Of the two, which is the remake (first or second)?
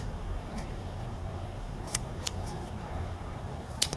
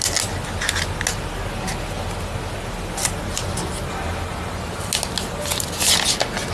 first